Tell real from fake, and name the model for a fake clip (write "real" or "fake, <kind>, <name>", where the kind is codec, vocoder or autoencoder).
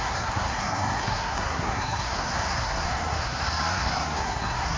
fake, codec, SNAC